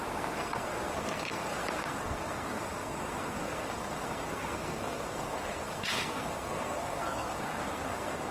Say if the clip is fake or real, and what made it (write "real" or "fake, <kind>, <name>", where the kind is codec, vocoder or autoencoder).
fake, codec, SNAC